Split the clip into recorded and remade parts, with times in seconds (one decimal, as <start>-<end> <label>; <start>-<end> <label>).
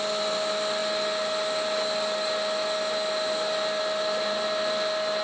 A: 0.0-5.2 recorded